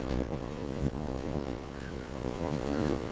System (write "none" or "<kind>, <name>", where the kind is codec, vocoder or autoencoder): vocoder, Vocos